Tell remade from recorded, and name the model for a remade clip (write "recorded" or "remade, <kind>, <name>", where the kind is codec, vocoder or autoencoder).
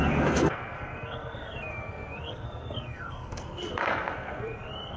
remade, codec, SNAC